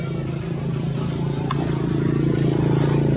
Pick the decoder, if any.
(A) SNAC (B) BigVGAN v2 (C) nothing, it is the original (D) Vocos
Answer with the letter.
C